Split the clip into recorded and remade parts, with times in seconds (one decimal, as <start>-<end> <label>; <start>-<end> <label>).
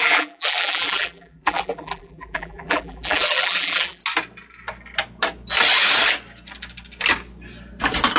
0.0-4.0 remade; 4.0-8.2 recorded